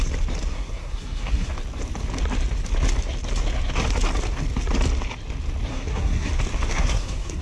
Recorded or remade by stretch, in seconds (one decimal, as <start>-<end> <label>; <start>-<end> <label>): 0.0-0.5 recorded; 0.5-1.5 remade; 1.5-5.7 recorded; 5.7-6.3 remade; 6.3-6.7 recorded; 6.7-7.4 remade